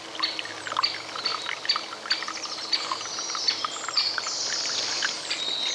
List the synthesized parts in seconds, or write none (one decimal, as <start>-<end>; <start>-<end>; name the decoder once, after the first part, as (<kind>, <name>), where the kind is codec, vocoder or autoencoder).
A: none